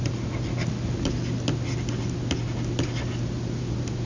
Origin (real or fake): real